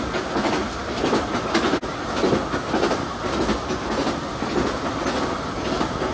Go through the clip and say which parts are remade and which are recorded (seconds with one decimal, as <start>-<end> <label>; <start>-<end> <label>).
0.0-6.1 recorded